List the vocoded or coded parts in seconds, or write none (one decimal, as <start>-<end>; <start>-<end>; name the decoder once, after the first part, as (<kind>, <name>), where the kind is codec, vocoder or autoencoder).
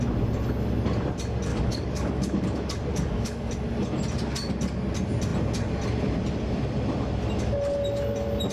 1.5-2.4 (codec, DAC); 2.9-3.5